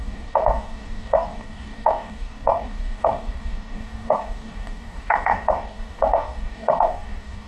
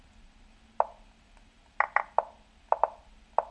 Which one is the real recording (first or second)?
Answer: second